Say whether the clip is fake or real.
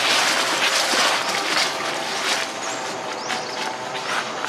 real